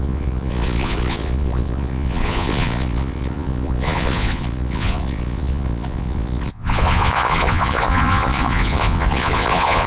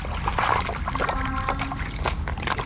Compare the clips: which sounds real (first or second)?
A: second